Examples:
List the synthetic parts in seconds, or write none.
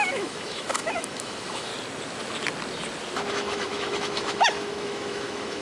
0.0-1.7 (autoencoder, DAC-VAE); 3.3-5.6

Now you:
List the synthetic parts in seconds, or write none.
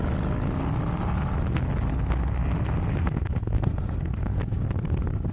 3.0-4.4 (codec, SNAC)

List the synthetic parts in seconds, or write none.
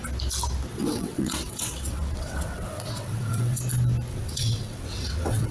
0.7-3.6 (vocoder, WaveNeXt); 4.1-5.5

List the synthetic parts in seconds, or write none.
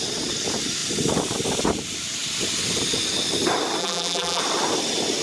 3.8-4.4 (vocoder, BigVGAN v2)